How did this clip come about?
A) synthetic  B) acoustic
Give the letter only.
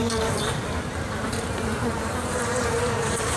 A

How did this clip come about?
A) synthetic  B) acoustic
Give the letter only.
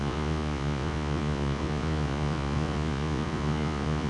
A